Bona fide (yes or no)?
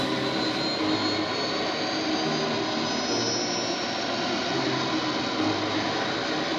yes